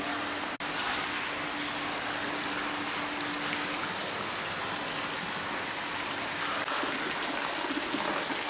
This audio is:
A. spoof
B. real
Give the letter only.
B